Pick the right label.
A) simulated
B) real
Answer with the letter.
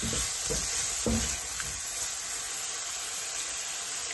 B